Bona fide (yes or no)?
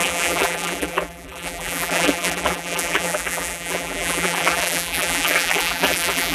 no